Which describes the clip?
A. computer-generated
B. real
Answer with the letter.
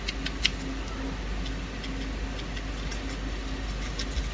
B